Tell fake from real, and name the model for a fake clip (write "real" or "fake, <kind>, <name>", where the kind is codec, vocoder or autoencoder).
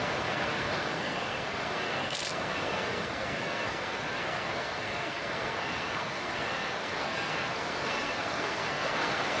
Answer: fake, codec, SNAC